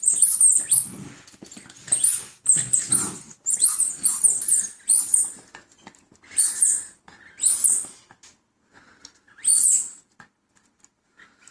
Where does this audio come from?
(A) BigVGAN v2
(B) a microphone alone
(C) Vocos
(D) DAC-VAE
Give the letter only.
B